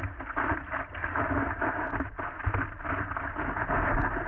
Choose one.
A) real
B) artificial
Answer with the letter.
A